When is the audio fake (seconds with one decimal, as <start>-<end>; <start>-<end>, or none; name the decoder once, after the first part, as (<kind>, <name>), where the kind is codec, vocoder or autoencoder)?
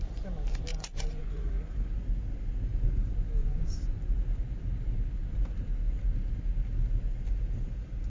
0.7-1.5 (vocoder, Vocos); 3.4-4.1